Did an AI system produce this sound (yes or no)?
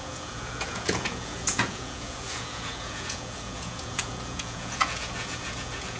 yes